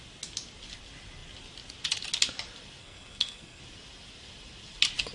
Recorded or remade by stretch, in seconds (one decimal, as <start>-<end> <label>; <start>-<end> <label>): 0.0-2.8 recorded; 2.8-3.6 remade; 3.6-5.1 recorded